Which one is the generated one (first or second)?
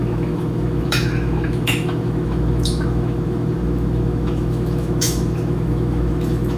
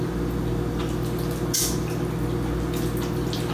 first